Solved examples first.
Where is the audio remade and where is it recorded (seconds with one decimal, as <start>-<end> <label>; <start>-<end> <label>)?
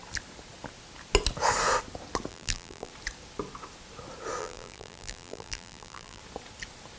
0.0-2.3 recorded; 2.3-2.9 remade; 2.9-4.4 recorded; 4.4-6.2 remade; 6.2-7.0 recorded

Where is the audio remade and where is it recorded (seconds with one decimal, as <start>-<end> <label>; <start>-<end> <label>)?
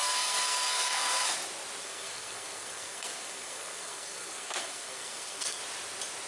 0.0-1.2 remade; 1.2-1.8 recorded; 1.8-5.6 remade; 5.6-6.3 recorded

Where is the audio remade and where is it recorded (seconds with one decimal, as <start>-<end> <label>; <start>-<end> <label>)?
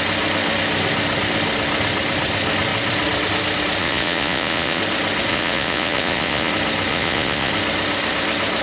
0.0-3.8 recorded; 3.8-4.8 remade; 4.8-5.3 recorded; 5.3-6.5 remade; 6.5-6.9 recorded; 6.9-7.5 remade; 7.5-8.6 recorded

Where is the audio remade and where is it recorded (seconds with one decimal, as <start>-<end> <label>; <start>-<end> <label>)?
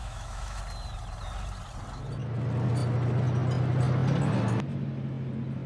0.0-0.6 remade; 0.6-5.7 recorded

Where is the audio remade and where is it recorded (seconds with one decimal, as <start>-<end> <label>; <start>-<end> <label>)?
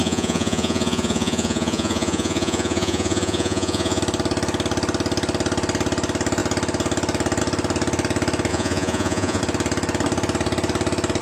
0.0-4.0 remade; 4.0-8.5 recorded; 8.5-9.4 remade; 9.4-11.2 recorded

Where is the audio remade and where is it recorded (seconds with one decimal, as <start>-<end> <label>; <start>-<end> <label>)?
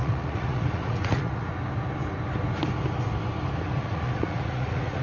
0.0-1.5 remade; 1.5-3.8 recorded; 3.8-5.0 remade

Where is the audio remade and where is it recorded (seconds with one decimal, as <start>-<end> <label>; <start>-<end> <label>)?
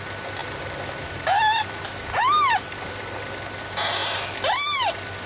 0.0-5.3 recorded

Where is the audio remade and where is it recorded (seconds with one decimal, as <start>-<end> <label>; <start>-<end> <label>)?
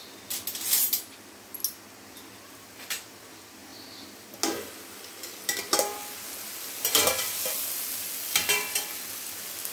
0.0-9.7 recorded